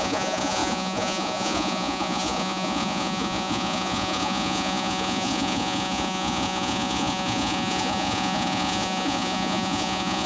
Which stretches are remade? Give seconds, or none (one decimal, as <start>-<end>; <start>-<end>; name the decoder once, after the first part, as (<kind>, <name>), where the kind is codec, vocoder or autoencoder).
0.0-10.3 (vocoder, Vocos)